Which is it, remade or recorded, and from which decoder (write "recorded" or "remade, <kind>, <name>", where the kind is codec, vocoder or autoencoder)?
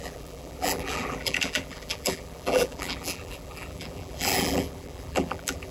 remade, vocoder, BigVGAN v2